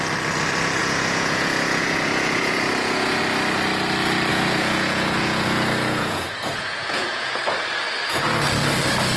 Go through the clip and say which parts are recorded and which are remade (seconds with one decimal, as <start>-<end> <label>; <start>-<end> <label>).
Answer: 0.0-0.8 recorded; 0.8-3.2 remade; 3.2-4.3 recorded; 4.3-7.3 remade; 7.3-9.2 recorded